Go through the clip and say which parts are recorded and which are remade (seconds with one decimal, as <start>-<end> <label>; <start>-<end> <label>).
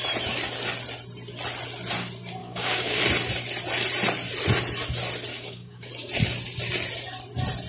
0.0-2.4 recorded; 2.4-3.0 remade; 3.0-5.3 recorded; 5.3-5.9 remade; 5.9-7.7 recorded